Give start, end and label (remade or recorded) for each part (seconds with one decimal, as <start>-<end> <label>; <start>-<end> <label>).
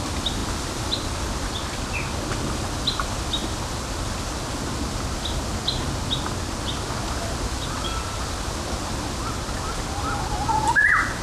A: 0.0-11.2 recorded